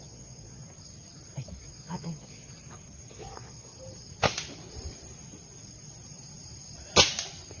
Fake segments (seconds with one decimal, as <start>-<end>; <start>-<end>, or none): 0.0-0.6; 1.6-2.5; 3.1-3.7